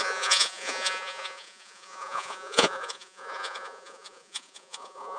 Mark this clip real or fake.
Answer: fake